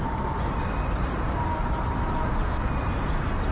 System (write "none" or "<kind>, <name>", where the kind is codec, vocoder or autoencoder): none